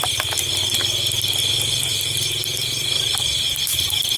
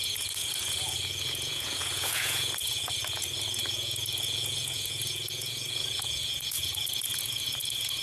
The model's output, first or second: second